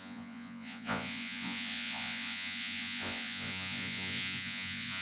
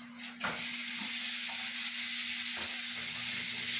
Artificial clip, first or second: first